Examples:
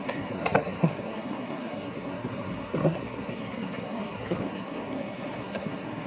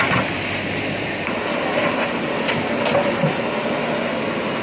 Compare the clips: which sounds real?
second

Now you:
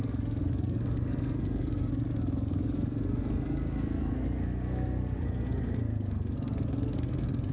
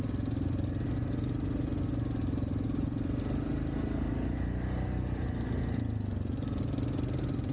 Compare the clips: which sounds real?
second